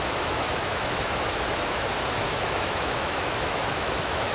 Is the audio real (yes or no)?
no